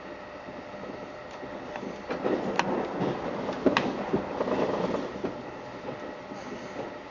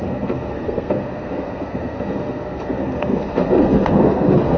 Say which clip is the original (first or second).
first